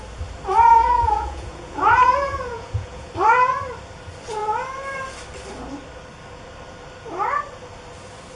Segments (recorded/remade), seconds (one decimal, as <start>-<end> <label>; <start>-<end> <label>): 0.0-0.7 recorded; 0.7-3.1 remade; 3.1-8.4 recorded